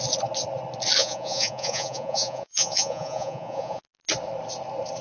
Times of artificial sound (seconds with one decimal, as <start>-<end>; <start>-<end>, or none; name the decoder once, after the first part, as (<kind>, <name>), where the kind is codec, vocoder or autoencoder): 1.0-3.8 (vocoder, Vocos)